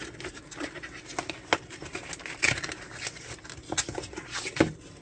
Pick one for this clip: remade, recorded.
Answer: recorded